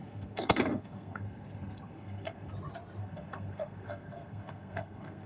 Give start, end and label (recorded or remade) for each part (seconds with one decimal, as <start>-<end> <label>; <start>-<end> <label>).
0.0-2.5 remade; 2.5-3.0 recorded; 3.0-5.3 remade